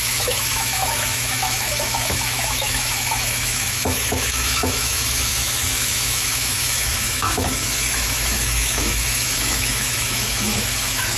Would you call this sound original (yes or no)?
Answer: no